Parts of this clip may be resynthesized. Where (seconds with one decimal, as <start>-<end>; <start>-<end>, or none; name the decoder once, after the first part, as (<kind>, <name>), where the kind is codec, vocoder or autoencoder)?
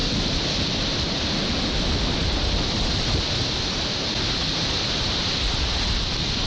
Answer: none